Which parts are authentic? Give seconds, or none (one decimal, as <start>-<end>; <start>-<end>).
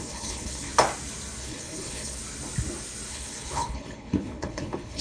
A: 0.7-1.4; 2.2-3.1